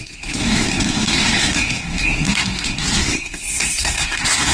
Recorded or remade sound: remade